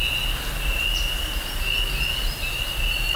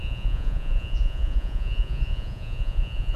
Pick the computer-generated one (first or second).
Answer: second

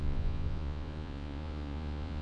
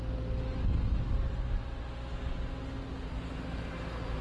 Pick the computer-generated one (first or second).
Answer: first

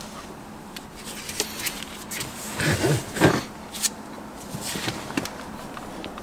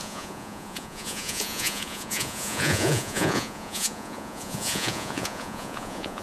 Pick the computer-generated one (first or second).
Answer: second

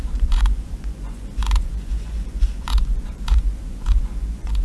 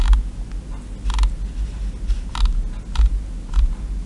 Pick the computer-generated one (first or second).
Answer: first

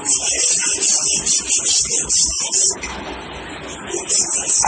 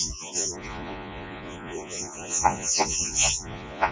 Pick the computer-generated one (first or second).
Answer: second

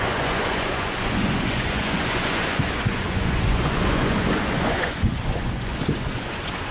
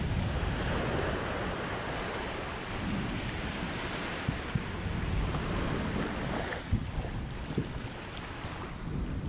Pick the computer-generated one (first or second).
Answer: first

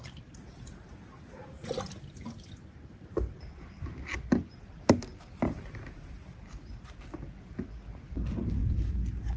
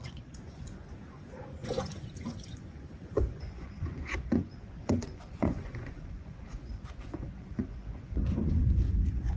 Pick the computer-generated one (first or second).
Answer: second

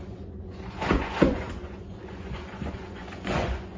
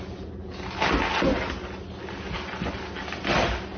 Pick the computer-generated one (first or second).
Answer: first